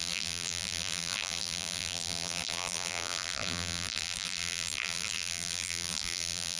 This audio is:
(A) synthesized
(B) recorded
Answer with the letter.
A